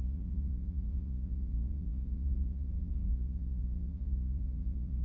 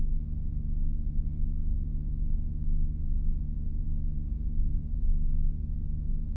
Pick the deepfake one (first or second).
first